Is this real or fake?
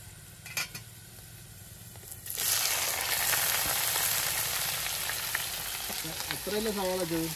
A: real